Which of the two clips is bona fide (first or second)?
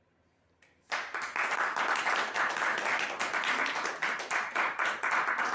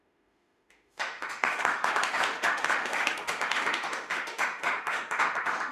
first